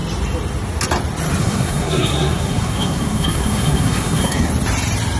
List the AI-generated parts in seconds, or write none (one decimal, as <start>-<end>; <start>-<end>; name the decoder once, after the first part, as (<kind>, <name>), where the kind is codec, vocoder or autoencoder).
1.4-4.5 (codec, SNAC)